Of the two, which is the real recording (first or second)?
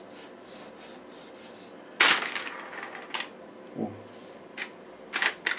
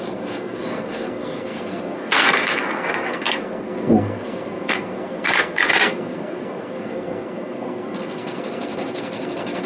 first